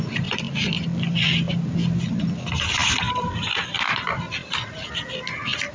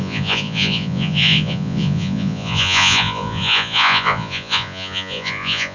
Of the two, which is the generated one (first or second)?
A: second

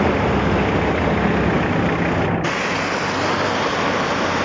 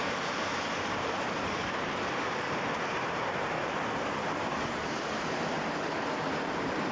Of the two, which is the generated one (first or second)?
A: second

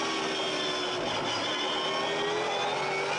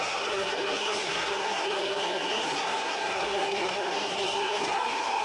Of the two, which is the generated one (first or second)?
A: second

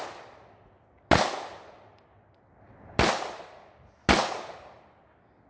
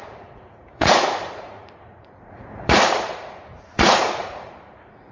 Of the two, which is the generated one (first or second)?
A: second